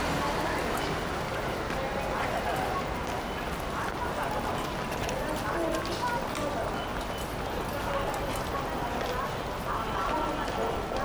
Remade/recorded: recorded